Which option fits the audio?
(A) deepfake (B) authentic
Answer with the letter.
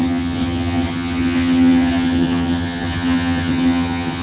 A